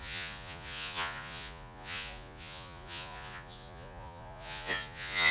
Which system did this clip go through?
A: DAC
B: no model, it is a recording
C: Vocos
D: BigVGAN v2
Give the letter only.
C